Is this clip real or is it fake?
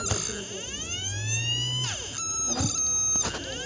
real